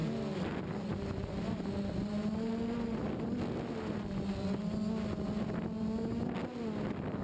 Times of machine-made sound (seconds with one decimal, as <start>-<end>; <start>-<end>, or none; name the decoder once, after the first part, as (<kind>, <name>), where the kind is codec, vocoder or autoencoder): none